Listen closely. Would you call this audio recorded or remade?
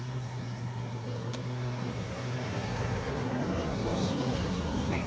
remade